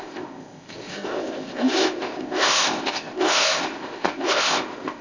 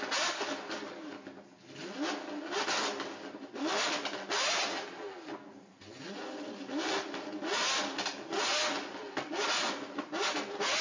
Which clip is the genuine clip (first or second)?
second